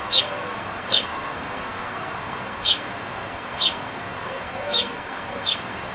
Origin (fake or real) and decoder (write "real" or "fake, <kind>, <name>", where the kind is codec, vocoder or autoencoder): fake, codec, SNAC